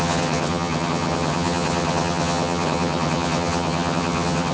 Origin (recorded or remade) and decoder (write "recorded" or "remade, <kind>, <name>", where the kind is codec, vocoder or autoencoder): remade, vocoder, HiFi-GAN